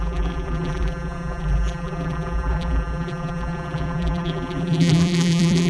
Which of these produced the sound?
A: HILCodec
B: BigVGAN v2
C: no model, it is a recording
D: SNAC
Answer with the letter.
B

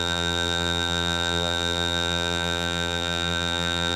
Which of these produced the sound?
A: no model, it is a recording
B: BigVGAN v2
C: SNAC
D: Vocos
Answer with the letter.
B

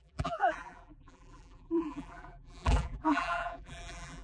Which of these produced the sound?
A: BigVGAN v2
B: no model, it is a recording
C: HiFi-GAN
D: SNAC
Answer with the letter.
A